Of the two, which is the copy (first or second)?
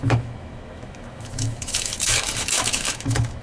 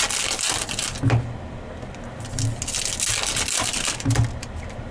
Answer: first